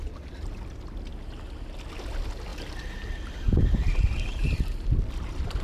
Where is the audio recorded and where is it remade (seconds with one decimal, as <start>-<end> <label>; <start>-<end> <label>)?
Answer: 0.0-5.6 recorded